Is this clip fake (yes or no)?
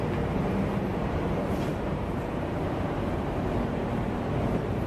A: yes